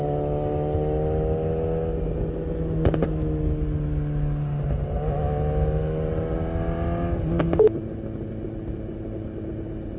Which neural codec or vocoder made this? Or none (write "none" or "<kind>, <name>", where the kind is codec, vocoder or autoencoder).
none